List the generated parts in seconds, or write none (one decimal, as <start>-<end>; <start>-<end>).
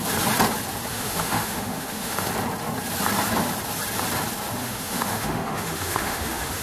0.9-2.3; 4.6-6.6